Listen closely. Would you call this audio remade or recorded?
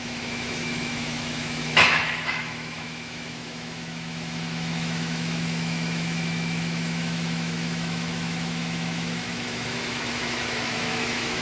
remade